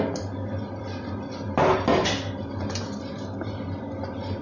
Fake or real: real